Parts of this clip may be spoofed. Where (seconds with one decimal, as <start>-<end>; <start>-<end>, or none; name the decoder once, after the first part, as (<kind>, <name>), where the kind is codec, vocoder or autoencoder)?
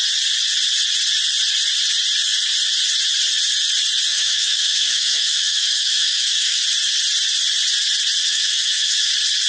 4.1-6.6 (autoencoder, DAC-VAE); 8.2-9.1